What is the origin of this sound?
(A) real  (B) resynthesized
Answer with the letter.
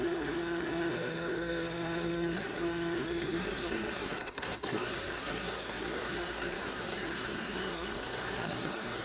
B